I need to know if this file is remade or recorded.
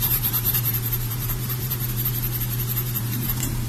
remade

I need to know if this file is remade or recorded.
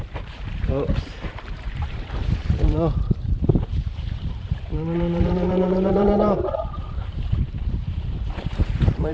remade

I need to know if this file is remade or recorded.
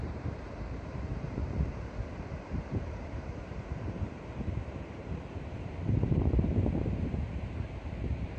remade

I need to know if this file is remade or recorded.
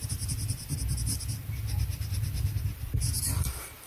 recorded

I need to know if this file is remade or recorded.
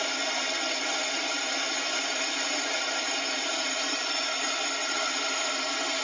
remade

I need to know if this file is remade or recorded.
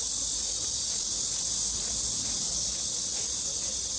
recorded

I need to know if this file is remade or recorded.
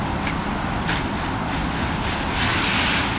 remade